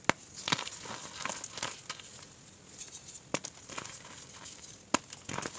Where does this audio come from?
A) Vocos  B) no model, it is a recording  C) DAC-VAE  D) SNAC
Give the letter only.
B